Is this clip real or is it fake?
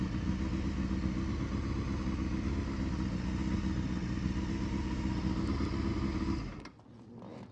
real